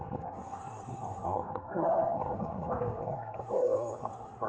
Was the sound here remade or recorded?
remade